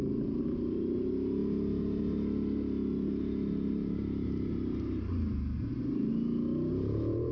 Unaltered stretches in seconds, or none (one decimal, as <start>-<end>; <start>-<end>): 1.4-3.7; 6.1-6.7